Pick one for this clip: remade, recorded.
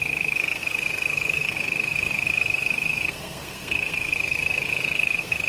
remade